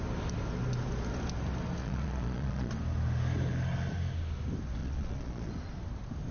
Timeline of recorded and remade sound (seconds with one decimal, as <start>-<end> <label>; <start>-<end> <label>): 0.0-1.8 recorded; 1.8-2.7 remade; 2.7-4.8 recorded; 4.8-5.5 remade; 5.5-6.3 recorded